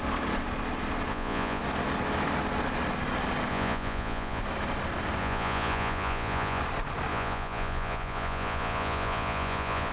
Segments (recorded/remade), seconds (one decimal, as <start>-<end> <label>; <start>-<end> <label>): 0.0-1.1 recorded; 1.1-1.6 remade; 1.6-3.5 recorded; 3.5-4.4 remade; 4.4-5.2 recorded; 5.2-6.6 remade; 6.6-7.1 recorded; 7.1-9.9 remade